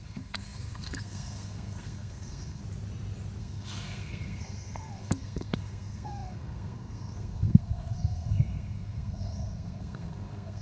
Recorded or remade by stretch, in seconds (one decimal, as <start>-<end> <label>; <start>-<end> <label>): 0.0-2.6 remade; 2.6-3.4 recorded; 3.4-10.6 remade

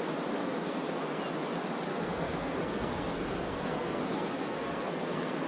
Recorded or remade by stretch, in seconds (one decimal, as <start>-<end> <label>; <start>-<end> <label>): 0.0-0.4 recorded; 0.4-1.2 remade; 1.2-1.9 recorded; 1.9-5.5 remade

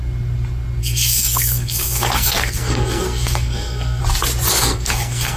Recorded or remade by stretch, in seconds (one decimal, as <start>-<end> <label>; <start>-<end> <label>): 0.0-0.8 recorded; 0.8-4.0 remade; 4.0-4.5 recorded; 4.5-5.4 remade

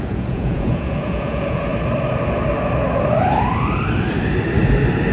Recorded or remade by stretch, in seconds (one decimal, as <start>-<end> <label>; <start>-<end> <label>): 0.0-1.7 remade; 1.7-5.1 recorded

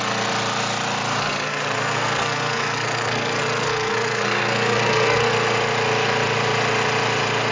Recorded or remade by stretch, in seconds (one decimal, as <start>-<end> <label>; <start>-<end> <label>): 0.0-1.2 recorded; 1.2-5.3 remade; 5.3-7.5 recorded